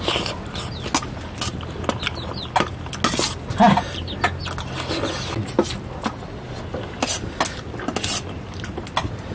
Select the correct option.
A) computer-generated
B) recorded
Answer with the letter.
B